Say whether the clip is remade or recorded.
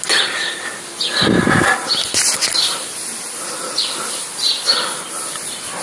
recorded